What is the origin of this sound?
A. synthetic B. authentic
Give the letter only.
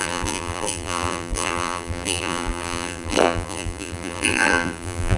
A